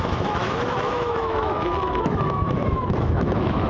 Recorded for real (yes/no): no